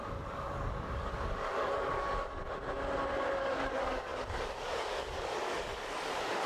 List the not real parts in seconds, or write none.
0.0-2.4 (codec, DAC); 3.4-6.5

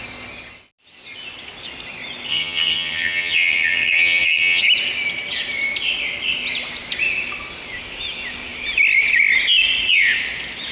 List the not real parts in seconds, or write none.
2.3-4.6 (vocoder, HiFi-GAN)

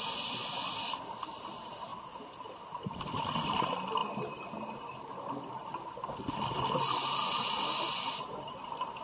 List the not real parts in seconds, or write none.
none

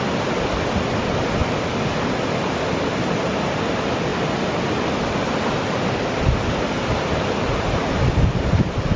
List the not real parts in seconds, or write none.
none

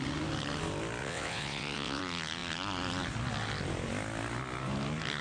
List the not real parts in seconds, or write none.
1.0-2.0 (vocoder, WaveNeXt)